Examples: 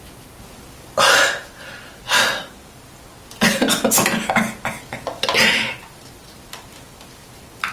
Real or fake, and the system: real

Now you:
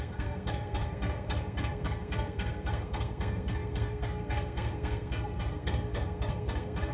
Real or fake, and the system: fake, codec, SNAC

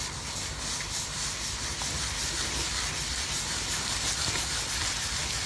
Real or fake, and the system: real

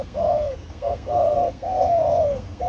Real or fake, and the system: fake, codec, SNAC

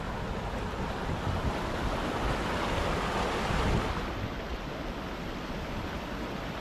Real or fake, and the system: real